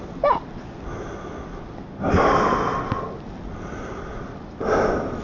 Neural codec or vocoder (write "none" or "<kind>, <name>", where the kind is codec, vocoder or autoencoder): none